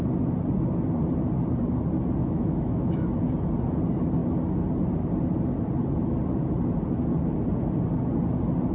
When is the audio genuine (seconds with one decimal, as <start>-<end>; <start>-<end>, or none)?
0.0-2.2; 3.1-8.7